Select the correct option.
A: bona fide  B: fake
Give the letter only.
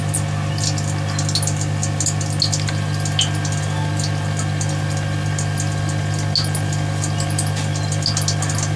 A